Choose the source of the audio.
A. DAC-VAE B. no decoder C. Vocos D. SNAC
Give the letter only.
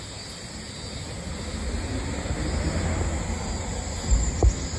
B